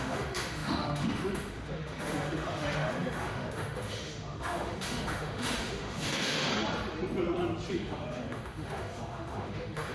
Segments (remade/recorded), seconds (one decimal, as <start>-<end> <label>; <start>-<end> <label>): 0.0-6.5 remade; 6.5-7.7 recorded; 7.7-9.9 remade